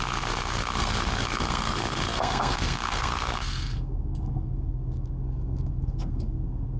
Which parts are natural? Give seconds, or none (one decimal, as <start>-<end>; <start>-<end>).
none